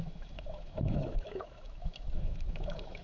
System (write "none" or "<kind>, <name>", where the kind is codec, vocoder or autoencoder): autoencoder, DAC-VAE